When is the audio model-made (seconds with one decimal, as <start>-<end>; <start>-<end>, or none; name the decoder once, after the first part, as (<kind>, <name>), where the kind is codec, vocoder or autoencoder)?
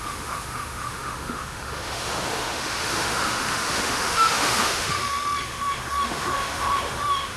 0.0-7.4 (autoencoder, DAC-VAE)